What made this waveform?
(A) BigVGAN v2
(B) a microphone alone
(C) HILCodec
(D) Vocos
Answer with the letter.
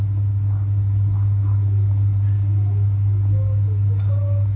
B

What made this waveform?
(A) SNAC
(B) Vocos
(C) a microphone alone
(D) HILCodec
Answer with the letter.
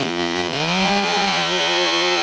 B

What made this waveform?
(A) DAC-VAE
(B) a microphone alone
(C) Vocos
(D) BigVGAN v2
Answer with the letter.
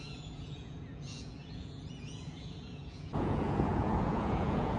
C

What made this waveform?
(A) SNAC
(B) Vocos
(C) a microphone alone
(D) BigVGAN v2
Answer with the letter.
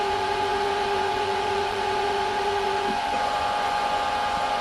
B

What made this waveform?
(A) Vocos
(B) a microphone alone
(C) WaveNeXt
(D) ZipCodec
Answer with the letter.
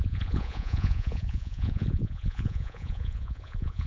A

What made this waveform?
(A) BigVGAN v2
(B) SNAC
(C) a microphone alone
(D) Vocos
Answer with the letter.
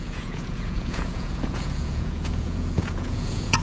D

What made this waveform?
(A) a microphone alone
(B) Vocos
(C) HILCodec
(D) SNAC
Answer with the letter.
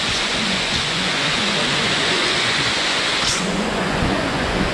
B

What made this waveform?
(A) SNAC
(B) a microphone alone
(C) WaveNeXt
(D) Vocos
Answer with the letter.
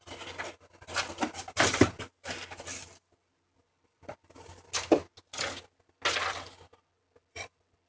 B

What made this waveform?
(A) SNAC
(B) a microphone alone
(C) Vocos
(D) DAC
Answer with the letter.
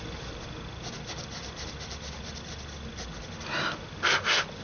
B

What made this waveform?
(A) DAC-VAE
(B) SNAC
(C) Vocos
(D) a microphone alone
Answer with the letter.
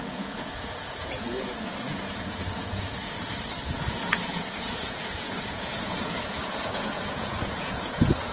C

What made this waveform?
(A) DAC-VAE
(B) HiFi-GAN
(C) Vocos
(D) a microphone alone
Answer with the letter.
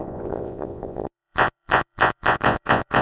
C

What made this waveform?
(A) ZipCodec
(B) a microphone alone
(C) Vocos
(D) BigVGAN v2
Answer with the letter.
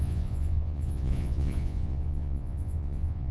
C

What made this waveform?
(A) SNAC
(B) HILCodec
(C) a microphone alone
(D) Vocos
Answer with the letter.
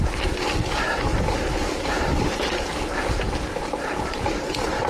C